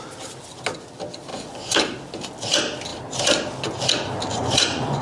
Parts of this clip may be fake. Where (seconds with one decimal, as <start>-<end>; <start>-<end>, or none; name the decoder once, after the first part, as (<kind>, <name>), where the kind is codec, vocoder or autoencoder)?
1.3-1.8 (vocoder, Vocos); 4.3-5.0